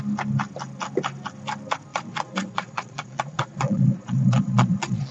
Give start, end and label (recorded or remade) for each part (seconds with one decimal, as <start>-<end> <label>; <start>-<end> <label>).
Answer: 0.0-1.9 recorded; 1.9-5.1 remade